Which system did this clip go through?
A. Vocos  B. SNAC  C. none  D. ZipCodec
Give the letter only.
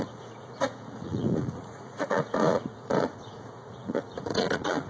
A